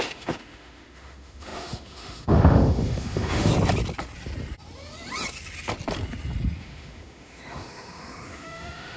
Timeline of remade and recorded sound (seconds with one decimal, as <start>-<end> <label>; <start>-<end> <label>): 0.0-3.5 remade; 3.5-6.6 recorded; 6.6-9.0 remade